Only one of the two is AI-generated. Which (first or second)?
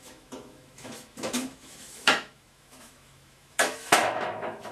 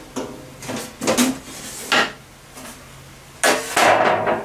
first